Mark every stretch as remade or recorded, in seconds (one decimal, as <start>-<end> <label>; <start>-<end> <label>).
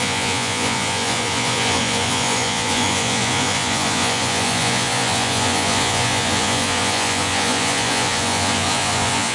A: 0.0-9.3 remade